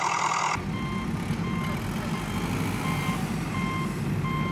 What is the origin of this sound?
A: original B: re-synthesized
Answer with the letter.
A